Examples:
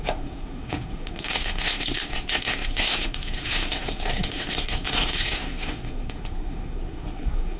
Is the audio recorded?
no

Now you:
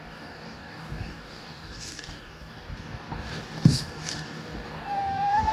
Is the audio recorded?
no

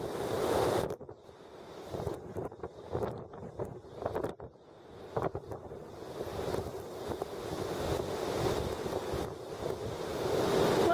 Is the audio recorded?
yes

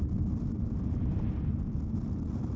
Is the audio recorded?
yes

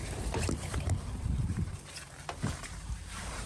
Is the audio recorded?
no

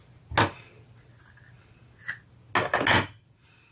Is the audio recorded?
yes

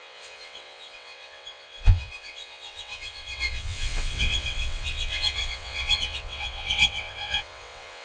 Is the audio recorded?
no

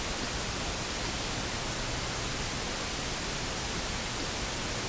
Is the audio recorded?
yes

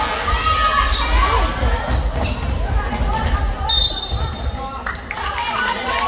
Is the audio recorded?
yes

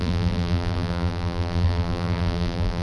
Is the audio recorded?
no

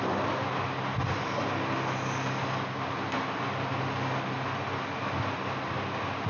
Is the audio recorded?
yes